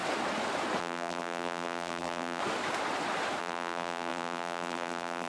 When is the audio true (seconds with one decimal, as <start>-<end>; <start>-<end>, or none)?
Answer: 0.0-0.8; 2.4-3.4